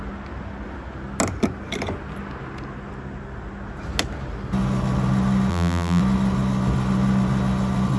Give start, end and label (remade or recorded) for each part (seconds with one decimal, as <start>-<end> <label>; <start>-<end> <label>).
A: 0.0-5.5 recorded; 5.5-6.0 remade; 6.0-8.0 recorded